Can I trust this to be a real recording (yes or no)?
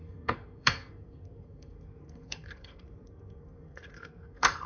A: no